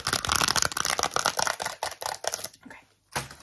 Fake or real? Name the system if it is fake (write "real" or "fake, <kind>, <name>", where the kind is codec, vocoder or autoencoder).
real